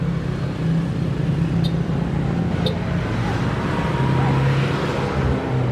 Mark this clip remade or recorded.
recorded